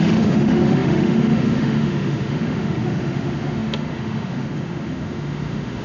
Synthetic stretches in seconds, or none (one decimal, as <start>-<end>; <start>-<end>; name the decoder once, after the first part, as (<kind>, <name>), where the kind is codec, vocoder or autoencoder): 0.0-5.8 (autoencoder, DAC-VAE)